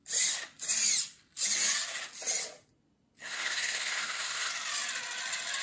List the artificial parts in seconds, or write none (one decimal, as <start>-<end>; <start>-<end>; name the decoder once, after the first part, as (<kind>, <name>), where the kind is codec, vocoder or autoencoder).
3.2-4.5 (codec, SNAC)